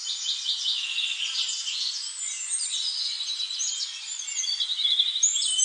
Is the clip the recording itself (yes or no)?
yes